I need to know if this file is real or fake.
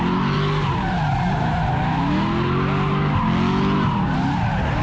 real